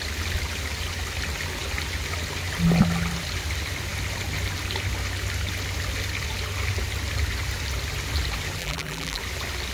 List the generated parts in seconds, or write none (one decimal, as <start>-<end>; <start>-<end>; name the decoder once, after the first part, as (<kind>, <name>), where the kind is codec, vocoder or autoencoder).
8.6-9.2 (vocoder, BigVGAN v2)